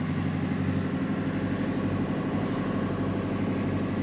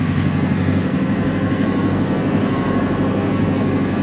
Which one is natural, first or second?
first